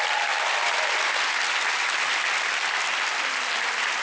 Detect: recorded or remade recorded